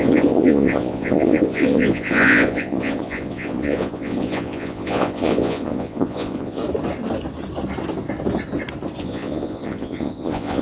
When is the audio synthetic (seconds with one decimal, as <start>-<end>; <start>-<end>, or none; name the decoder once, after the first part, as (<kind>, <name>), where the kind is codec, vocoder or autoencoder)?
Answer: 0.0-6.6 (vocoder, Vocos); 9.0-10.6